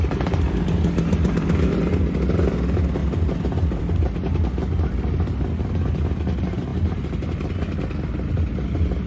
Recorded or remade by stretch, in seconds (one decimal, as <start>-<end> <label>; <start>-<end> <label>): 0.0-9.1 recorded